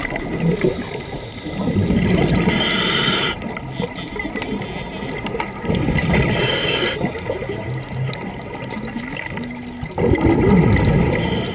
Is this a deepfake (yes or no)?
no